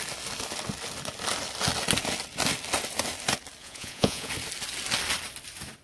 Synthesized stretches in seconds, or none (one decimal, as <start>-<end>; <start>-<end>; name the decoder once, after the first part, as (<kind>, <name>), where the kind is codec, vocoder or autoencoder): 3.6-4.3 (vocoder, Vocos)